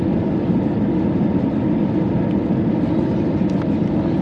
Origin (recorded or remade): recorded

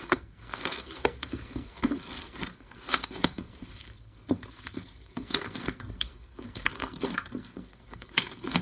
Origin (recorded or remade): remade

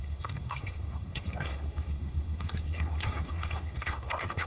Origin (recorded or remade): remade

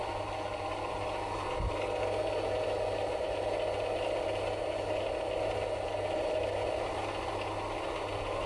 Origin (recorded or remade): recorded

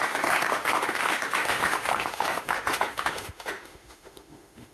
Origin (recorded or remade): remade